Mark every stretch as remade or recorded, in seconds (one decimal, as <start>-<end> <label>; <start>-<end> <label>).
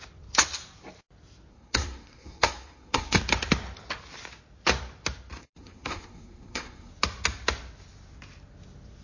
0.0-1.5 recorded; 1.5-3.2 remade; 3.2-5.4 recorded; 5.4-6.9 remade; 6.9-9.0 recorded